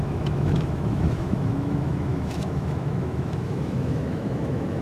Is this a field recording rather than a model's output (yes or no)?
no